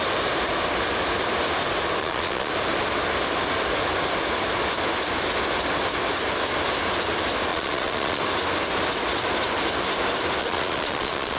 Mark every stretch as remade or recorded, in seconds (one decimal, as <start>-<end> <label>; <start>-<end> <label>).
0.0-2.0 recorded; 2.0-2.5 remade; 2.5-7.5 recorded; 7.5-8.2 remade; 8.2-10.4 recorded; 10.4-11.4 remade